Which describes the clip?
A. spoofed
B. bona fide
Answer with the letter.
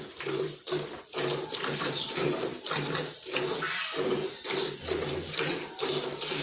A